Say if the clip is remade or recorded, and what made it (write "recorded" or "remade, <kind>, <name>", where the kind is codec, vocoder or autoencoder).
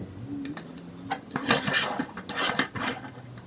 recorded